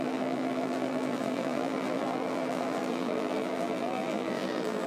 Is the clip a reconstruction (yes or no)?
yes